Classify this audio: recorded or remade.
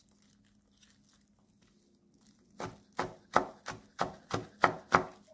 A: recorded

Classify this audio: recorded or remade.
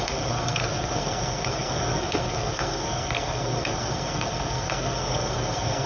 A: remade